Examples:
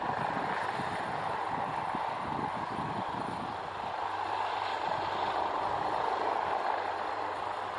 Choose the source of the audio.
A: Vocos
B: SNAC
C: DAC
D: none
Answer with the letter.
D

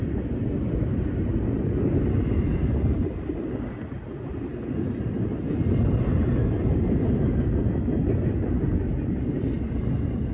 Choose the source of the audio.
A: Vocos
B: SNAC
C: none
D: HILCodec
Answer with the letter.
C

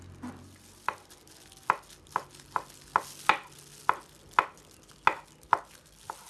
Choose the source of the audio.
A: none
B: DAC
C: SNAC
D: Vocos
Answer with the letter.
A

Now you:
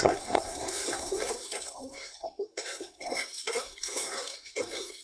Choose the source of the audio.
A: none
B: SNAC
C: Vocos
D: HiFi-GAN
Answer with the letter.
B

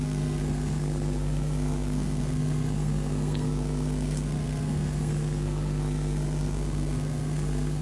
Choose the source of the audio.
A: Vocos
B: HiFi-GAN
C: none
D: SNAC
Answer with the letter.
D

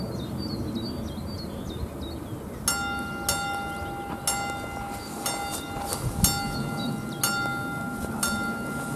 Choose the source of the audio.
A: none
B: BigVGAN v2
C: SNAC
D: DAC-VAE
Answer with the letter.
A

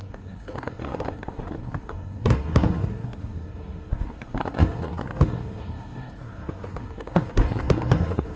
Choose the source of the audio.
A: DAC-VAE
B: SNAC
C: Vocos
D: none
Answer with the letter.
B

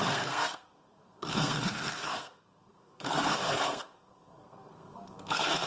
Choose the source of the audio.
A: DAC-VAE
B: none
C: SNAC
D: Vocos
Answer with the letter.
C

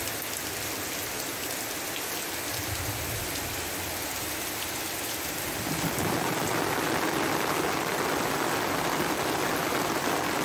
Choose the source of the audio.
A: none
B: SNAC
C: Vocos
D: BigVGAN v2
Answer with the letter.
A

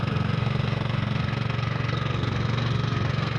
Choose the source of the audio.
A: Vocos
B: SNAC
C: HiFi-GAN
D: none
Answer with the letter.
B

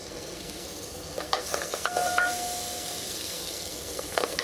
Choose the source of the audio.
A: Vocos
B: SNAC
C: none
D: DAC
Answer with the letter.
B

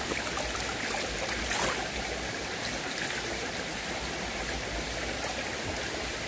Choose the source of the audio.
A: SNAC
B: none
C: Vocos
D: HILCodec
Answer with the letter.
B